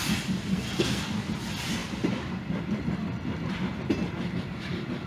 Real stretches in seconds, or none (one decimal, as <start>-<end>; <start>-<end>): 0.0-0.5; 1.1-5.1